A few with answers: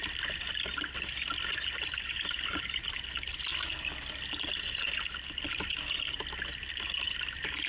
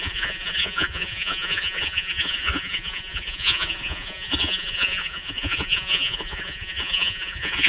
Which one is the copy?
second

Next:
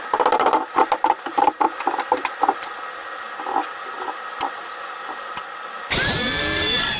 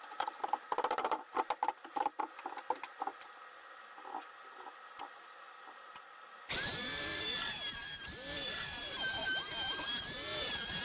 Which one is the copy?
second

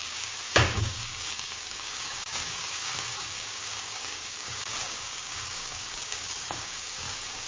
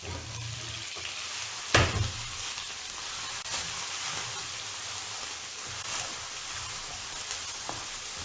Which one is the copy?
first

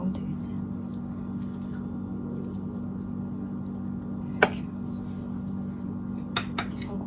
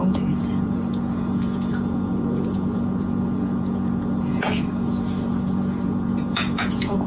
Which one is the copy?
second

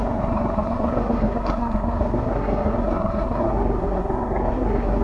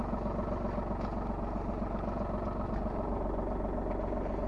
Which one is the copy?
first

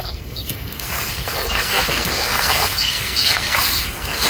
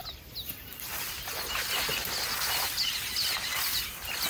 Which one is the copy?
first